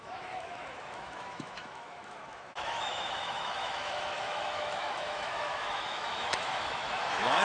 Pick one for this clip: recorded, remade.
remade